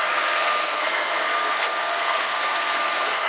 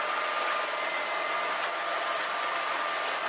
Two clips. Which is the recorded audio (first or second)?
second